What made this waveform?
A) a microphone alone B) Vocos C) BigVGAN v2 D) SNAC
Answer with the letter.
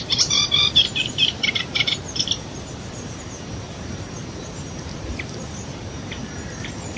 C